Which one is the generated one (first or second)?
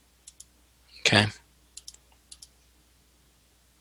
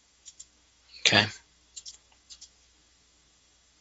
second